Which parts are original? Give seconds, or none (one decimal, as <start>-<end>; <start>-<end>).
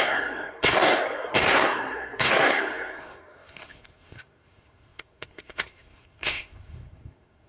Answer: none